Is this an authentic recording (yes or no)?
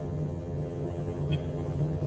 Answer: no